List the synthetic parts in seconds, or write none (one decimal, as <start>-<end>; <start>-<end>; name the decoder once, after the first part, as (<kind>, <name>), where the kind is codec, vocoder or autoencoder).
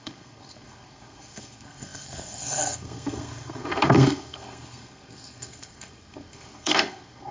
0.0-7.3 (codec, SNAC)